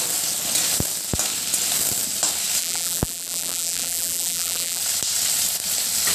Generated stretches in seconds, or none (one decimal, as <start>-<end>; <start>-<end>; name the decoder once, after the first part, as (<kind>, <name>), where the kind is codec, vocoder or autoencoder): 2.6-4.8 (vocoder, BigVGAN v2)